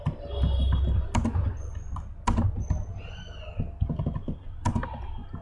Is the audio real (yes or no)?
yes